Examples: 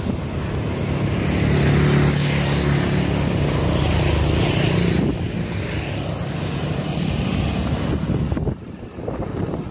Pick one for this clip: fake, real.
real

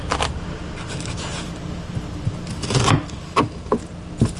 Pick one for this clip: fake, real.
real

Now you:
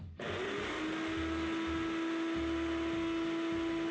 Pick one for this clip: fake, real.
real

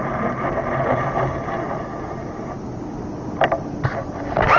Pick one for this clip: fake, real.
real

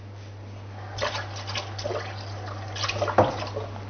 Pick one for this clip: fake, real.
real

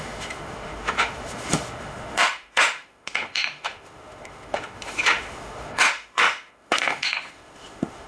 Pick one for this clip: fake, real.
fake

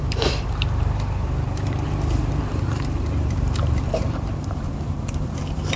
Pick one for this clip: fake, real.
fake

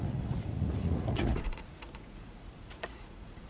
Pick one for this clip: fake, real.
fake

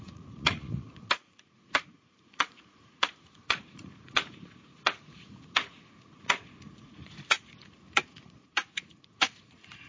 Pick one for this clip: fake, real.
fake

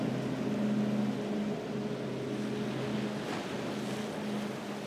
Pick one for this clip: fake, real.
real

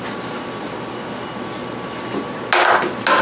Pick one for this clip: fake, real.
real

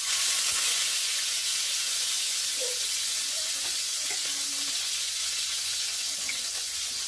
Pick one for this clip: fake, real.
fake